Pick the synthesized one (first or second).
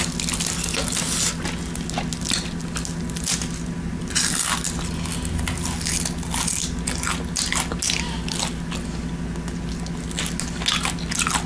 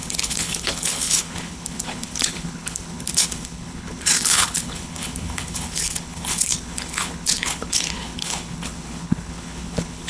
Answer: second